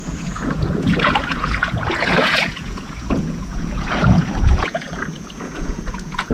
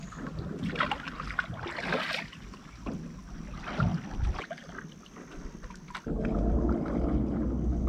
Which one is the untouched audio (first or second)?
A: second